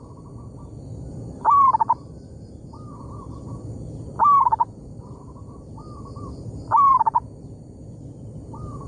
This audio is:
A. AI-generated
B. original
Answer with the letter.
B